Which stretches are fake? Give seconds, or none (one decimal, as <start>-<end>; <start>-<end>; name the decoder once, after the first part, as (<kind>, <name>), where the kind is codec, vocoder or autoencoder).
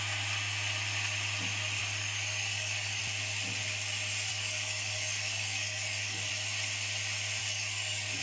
1.8-3.0 (codec, DAC); 4.3-6.3; 7.4-8.2